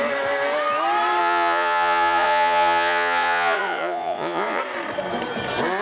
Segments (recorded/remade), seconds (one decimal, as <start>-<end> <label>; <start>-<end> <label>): 0.0-1.2 recorded; 1.2-4.6 remade; 4.6-5.8 recorded